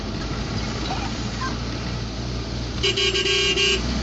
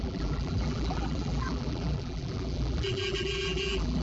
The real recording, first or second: first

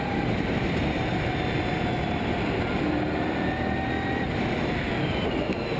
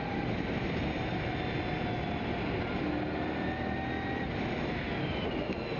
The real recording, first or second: second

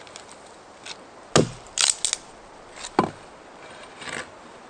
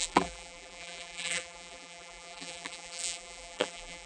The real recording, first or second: first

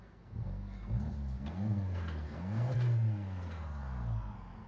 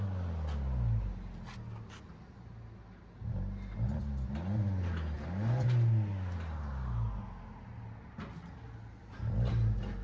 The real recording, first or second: second